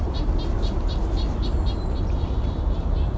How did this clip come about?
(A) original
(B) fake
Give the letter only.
A